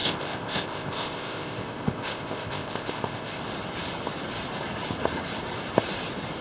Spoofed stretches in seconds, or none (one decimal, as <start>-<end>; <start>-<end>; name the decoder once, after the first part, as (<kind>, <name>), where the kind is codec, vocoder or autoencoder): 0.0-3.4 (codec, ZipCodec)